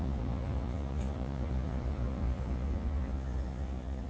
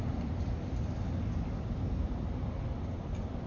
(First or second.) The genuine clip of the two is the second